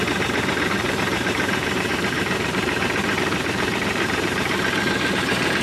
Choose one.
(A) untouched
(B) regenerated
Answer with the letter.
B